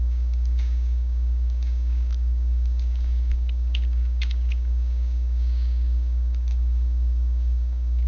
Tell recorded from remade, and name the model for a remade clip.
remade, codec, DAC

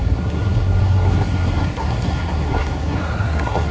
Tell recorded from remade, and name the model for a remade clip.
remade, codec, SNAC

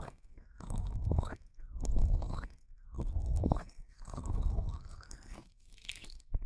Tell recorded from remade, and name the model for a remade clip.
remade, codec, SNAC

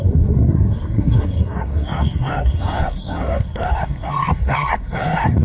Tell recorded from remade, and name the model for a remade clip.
remade, codec, SNAC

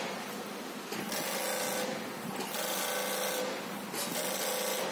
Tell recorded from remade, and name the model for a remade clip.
recorded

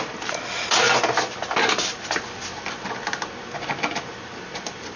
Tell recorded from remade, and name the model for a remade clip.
recorded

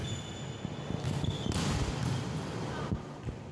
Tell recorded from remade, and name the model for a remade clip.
recorded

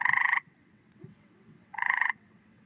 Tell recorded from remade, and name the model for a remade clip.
remade, vocoder, WaveNeXt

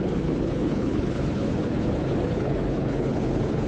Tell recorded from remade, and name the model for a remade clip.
remade, codec, HILCodec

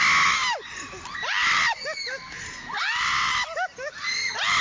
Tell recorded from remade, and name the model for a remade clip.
recorded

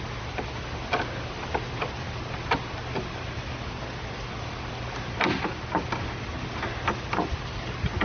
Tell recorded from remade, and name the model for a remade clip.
recorded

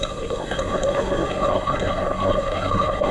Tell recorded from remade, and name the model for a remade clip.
remade, codec, SNAC